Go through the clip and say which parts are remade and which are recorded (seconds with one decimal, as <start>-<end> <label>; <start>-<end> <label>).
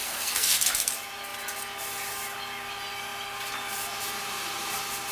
0.0-0.9 remade; 0.9-5.1 recorded